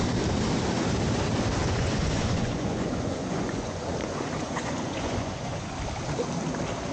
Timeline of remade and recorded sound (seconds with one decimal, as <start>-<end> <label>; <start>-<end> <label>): 0.0-1.6 recorded; 1.6-5.7 remade; 5.7-6.9 recorded